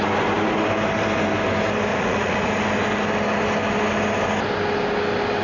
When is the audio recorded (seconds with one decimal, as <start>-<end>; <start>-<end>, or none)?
0.0-1.9; 2.5-5.4